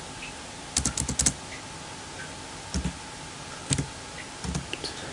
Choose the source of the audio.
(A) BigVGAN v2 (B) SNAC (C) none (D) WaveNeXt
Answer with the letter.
C